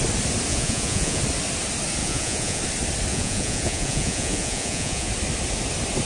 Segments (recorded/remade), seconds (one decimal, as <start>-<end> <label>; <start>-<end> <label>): 0.0-0.5 recorded; 0.5-1.2 remade; 1.2-2.0 recorded; 2.0-2.6 remade; 2.6-3.1 recorded; 3.1-5.1 remade; 5.1-6.1 recorded